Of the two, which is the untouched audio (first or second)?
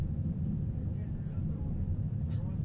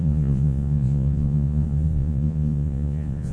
first